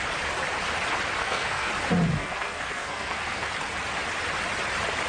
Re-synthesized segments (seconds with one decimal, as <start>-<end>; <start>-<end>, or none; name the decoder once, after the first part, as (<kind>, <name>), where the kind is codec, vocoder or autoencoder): 1.2-1.7 (codec, SNAC); 2.2-3.5